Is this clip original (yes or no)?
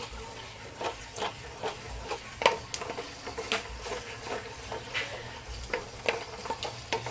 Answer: yes